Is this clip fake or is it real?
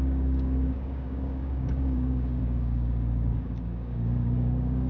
fake